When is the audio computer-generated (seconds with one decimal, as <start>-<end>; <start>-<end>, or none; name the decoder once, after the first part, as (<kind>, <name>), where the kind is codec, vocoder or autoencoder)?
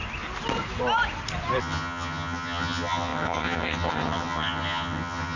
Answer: 1.6-5.4 (vocoder, HiFi-GAN)